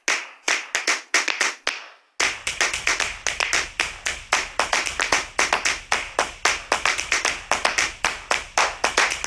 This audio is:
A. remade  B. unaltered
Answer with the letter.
B